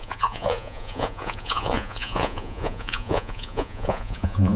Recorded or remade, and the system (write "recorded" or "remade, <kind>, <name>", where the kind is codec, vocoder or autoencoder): remade, vocoder, Vocos